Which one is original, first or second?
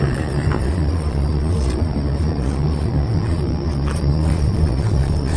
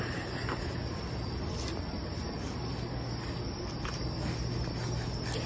second